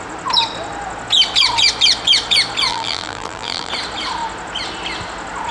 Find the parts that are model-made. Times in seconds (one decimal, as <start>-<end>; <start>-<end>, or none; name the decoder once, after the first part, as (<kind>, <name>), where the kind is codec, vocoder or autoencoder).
2.7-3.7 (vocoder, BigVGAN v2)